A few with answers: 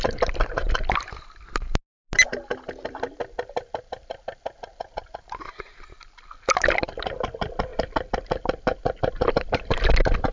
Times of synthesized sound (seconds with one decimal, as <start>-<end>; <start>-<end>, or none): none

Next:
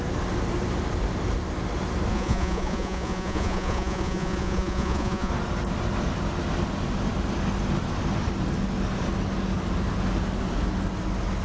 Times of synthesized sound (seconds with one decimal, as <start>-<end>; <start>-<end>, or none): 2.1-5.3

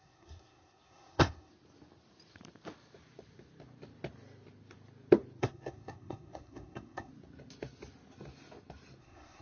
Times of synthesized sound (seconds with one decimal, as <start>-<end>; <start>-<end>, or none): 0.0-1.5; 5.4-7.1; 9.0-9.4